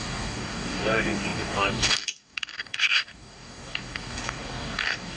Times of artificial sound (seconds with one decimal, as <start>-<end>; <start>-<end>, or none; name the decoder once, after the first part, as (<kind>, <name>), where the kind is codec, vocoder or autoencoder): 0.0-5.2 (codec, DAC)